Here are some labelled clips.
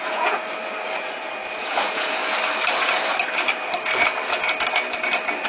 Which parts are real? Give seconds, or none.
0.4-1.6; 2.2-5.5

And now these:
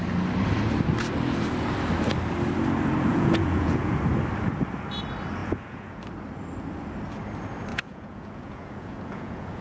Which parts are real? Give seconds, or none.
0.0-3.1; 4.0-5.4; 6.0-7.7

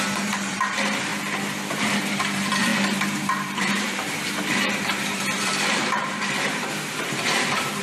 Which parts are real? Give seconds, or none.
1.1-1.7

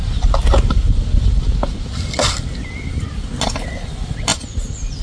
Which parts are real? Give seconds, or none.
0.0-5.0